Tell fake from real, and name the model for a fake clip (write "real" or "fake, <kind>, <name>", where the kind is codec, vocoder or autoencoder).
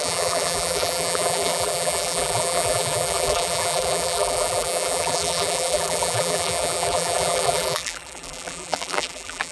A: fake, vocoder, BigVGAN v2